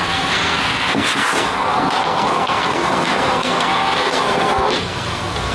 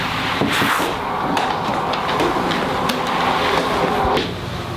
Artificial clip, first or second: first